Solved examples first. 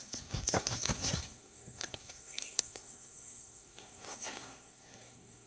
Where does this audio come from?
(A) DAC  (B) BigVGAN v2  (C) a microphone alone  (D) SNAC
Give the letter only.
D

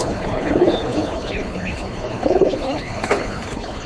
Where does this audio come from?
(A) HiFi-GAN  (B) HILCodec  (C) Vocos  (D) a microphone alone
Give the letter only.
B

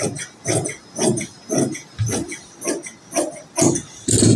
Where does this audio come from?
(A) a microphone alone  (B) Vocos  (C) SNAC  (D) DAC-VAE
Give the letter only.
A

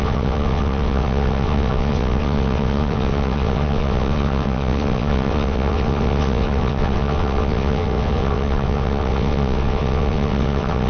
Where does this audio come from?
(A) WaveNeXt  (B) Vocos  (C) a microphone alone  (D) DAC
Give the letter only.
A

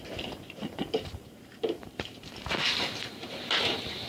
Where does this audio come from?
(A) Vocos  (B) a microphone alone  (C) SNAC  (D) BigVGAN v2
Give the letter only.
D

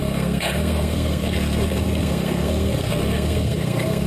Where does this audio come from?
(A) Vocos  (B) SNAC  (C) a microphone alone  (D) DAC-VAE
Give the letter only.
B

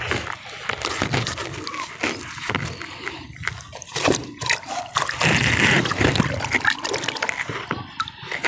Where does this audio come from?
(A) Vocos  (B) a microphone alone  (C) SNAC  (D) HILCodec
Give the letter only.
B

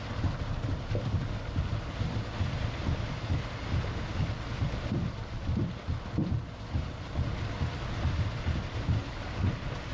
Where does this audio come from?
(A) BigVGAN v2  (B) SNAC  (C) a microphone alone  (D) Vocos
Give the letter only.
C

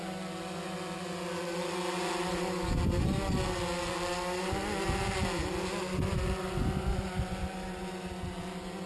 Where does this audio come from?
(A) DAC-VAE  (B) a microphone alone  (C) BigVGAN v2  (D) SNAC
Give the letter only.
B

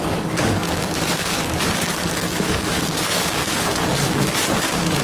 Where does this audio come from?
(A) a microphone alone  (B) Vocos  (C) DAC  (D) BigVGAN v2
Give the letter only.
C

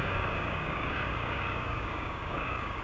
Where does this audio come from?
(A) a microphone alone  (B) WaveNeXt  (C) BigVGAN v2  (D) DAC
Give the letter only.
D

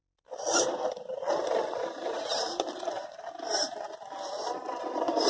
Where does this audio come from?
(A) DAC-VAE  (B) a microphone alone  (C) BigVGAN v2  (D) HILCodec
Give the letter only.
C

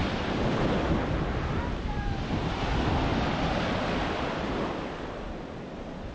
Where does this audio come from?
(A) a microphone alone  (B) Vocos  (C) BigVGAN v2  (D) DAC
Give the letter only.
C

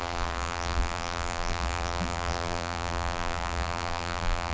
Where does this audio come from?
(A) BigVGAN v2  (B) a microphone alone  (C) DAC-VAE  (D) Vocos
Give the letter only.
A